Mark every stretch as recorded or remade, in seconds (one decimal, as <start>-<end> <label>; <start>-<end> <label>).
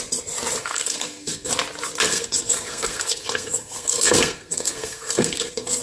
0.0-0.6 recorded; 0.6-1.5 remade; 1.5-2.1 recorded; 2.1-5.8 remade